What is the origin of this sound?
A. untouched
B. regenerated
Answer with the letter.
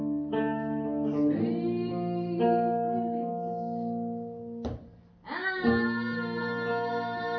A